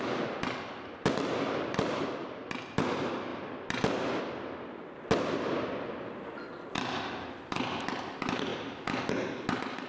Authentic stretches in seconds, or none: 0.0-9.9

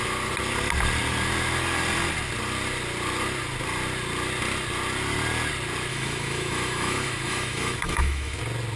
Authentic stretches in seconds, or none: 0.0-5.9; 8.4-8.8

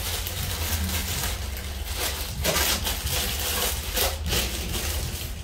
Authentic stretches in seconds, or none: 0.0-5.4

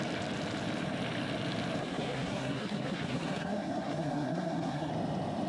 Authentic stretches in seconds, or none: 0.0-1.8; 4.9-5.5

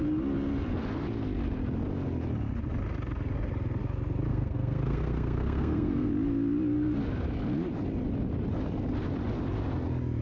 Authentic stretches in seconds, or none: 0.0-4.3; 6.1-10.2

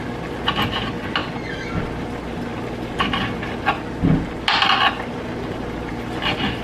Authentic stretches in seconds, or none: 0.0-6.6